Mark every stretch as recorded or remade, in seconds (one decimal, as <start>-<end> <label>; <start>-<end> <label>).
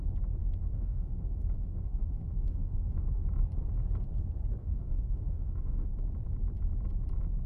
0.0-0.4 recorded; 0.4-3.2 remade; 3.2-4.6 recorded; 4.6-5.9 remade; 5.9-7.5 recorded